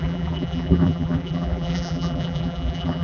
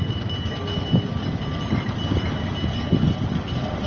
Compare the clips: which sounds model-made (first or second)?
first